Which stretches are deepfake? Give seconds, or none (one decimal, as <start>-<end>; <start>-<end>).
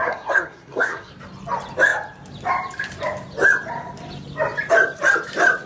0.0-1.1